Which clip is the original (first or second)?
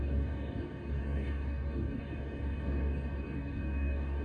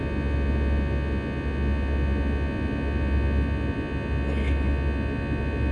second